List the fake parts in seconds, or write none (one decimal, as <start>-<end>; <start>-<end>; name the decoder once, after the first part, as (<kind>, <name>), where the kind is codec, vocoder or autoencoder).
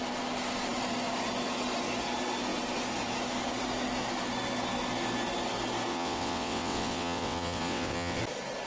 5.9-8.2 (vocoder, WaveNeXt)